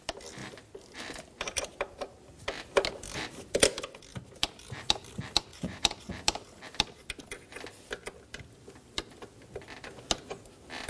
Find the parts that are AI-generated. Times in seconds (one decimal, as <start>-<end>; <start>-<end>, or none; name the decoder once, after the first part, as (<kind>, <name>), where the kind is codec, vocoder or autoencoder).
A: 5.5-6.1 (vocoder, Vocos)